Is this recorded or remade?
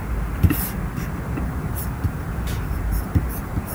recorded